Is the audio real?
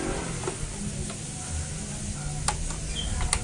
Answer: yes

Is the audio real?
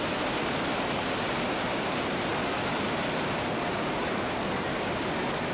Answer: yes